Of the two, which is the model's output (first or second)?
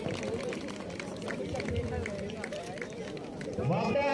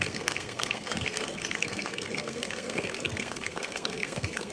second